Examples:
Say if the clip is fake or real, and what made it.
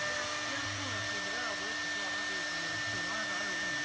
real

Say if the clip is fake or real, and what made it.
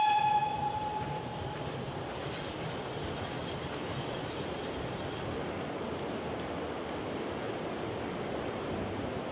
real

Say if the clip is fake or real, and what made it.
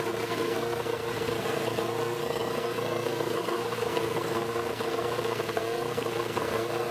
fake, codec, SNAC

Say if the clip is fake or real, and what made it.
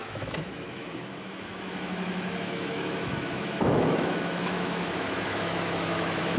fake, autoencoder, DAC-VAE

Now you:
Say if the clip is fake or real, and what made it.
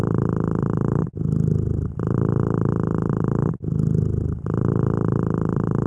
real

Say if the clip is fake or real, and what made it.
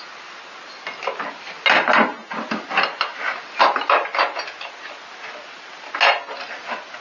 real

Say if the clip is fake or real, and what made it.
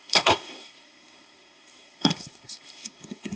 fake, codec, SNAC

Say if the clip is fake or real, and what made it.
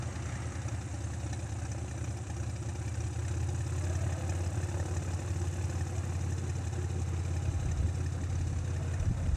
real